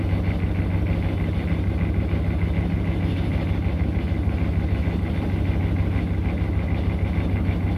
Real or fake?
real